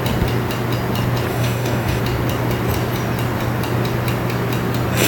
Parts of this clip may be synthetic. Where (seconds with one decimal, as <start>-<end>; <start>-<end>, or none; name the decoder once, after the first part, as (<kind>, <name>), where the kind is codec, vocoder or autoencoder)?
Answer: 1.3-2.0 (codec, DAC)